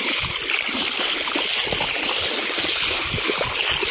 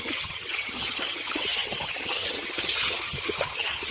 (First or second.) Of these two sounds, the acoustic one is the first